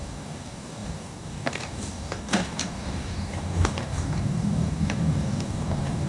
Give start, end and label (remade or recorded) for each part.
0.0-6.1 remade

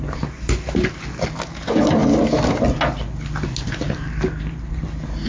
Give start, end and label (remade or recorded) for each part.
0.0-5.3 recorded